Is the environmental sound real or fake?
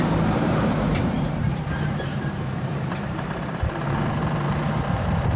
fake